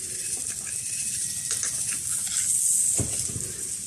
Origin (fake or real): real